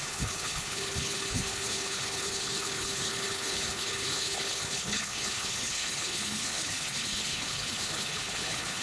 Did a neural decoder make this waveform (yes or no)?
yes